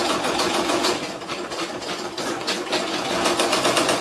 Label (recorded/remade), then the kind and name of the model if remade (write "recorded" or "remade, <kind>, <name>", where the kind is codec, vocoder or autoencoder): remade, vocoder, Vocos